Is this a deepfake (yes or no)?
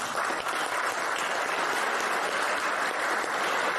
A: no